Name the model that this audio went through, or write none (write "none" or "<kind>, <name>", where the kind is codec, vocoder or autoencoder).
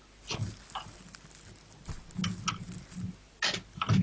none